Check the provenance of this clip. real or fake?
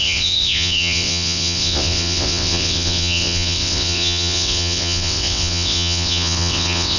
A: fake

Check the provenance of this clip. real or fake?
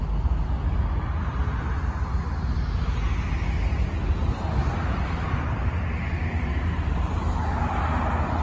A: real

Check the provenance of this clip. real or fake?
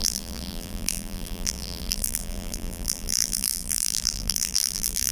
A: fake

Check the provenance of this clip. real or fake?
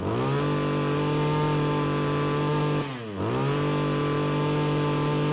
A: real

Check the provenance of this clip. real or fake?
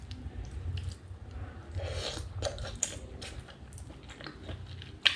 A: real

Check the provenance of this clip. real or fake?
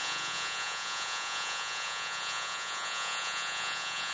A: fake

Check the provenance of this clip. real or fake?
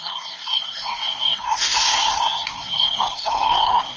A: fake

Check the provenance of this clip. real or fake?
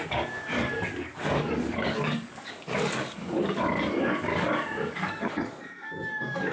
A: fake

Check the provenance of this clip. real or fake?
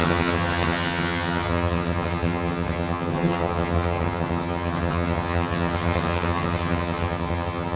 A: fake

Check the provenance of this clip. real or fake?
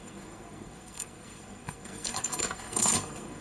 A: fake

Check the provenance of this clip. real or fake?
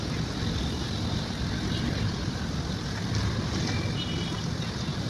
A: real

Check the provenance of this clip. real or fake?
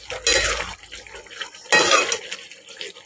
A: real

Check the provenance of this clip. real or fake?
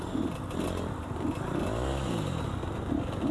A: real